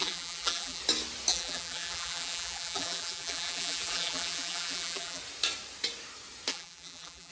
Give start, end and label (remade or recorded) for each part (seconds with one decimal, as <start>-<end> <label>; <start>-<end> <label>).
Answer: 0.0-0.8 remade; 0.8-1.3 recorded; 1.3-5.2 remade; 5.2-6.5 recorded; 6.5-7.3 remade